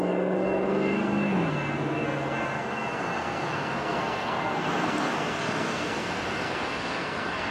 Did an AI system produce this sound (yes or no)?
yes